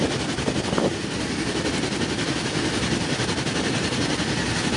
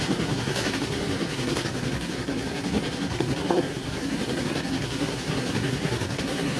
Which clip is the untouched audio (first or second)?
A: first